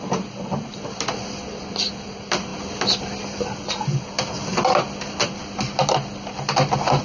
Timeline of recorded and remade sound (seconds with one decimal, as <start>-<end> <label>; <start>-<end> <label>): 0.0-7.0 recorded